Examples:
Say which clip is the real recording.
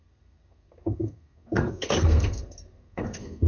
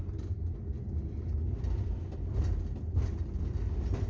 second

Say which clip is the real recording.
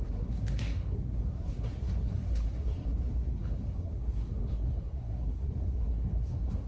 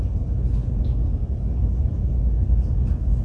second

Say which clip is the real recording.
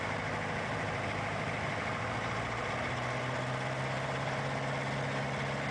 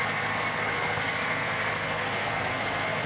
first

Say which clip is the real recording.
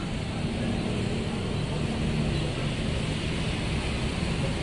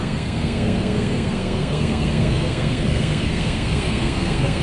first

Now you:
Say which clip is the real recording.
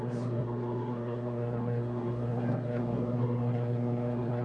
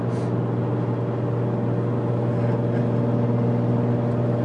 second